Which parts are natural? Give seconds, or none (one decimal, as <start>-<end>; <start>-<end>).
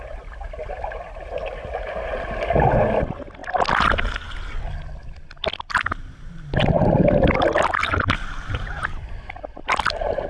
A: 0.0-10.3